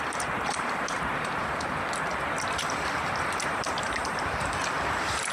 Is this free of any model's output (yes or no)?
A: no